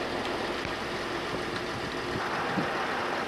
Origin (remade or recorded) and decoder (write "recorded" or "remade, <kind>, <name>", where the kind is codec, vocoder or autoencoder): recorded